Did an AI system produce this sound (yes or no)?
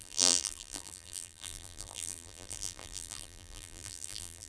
yes